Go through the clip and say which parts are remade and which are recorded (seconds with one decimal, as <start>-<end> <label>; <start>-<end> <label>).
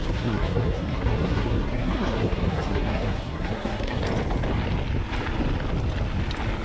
0.0-4.0 remade; 4.0-6.6 recorded